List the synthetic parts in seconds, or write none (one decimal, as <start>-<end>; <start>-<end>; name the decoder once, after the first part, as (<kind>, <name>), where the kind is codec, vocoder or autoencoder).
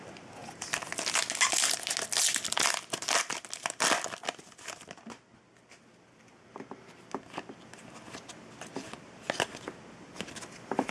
none